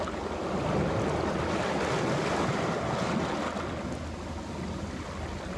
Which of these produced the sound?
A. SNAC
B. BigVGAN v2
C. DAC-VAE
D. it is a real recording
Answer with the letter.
D